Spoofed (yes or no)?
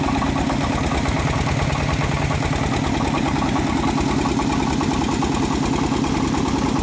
no